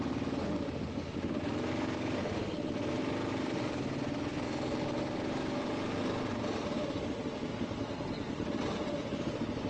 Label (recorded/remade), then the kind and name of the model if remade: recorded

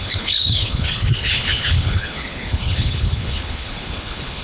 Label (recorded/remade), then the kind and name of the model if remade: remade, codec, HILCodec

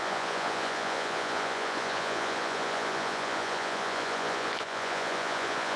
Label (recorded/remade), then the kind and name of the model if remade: remade, vocoder, Vocos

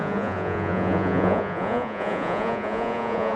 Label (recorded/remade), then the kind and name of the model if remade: remade, vocoder, Vocos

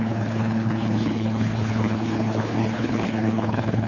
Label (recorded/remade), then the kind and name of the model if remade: remade, codec, HILCodec